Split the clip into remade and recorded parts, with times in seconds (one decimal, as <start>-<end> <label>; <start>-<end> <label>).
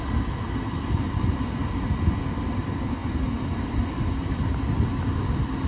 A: 0.0-5.7 recorded